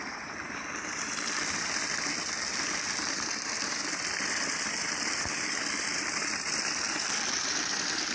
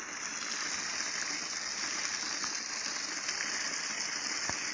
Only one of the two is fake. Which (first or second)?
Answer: first